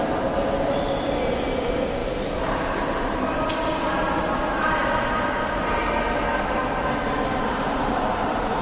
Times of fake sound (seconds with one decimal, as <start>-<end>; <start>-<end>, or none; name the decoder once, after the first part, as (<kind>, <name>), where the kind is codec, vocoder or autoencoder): none